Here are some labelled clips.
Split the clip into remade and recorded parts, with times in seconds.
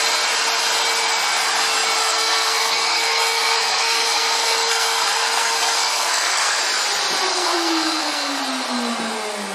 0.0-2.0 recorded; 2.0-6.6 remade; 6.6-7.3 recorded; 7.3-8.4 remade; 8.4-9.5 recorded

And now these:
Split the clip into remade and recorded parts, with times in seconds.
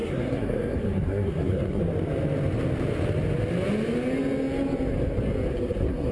0.0-1.8 remade; 1.8-5.5 recorded; 5.5-6.1 remade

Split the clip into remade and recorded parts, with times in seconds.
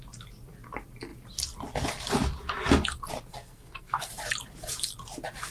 0.0-3.3 recorded; 3.3-4.1 remade; 4.1-5.5 recorded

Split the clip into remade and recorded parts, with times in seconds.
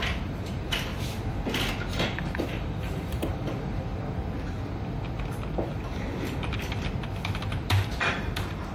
0.0-0.9 remade; 0.9-1.7 recorded; 1.7-3.9 remade; 3.9-7.5 recorded; 7.5-8.7 remade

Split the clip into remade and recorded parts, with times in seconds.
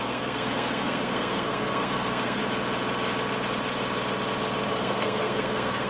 0.0-2.4 remade; 2.4-4.7 recorded; 4.7-5.9 remade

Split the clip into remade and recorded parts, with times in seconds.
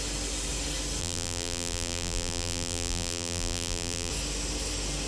0.0-1.0 recorded; 1.0-4.1 remade; 4.1-5.1 recorded